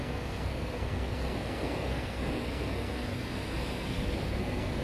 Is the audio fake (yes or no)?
yes